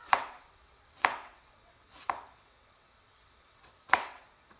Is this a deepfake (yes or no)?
yes